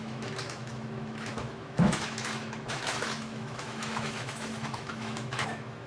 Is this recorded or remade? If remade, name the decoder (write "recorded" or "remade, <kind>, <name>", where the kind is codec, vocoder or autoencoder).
remade, autoencoder, DAC-VAE